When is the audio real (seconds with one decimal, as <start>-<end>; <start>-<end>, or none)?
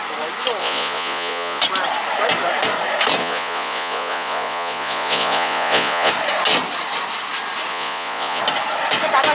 0.0-0.6; 1.6-3.2; 6.1-7.7; 8.4-9.3